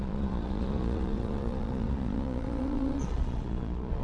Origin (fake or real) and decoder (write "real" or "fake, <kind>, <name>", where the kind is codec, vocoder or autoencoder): fake, vocoder, Vocos